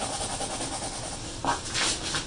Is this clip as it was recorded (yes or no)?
yes